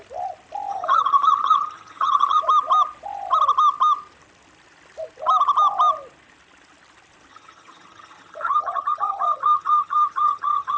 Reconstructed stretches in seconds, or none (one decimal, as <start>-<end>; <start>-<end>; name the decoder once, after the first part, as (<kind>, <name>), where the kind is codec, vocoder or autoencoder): 0.7-2.4 (vocoder, HiFi-GAN); 7.3-10.8